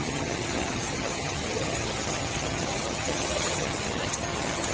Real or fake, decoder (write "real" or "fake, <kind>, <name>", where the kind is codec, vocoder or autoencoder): fake, vocoder, HiFi-GAN